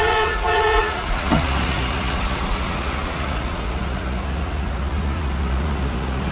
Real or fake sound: fake